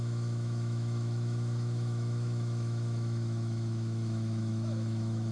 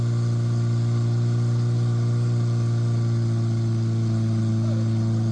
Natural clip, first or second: second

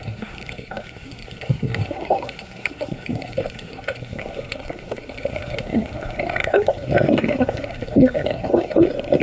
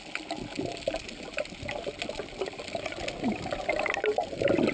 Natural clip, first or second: second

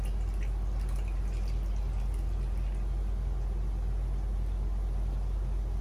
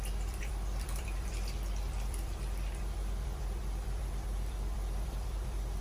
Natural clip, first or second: first